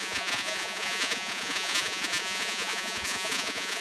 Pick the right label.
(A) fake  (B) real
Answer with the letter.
A